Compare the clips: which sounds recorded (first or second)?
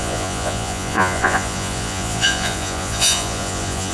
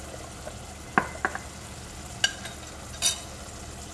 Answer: second